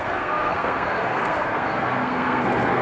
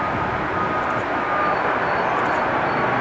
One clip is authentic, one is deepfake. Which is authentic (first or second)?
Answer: second